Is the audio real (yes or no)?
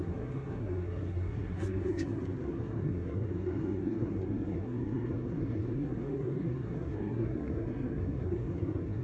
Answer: no